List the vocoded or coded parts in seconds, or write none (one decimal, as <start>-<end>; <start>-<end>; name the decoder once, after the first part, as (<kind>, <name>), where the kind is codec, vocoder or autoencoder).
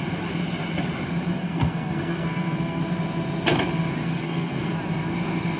1.4-2.8 (codec, SNAC); 4.0-4.7